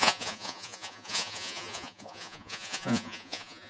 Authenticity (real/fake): fake